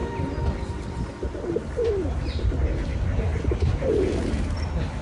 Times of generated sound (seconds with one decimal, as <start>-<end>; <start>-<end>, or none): 0.0-1.5; 3.3-3.9